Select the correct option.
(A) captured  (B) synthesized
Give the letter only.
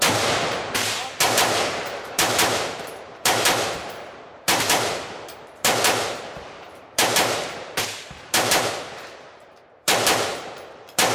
B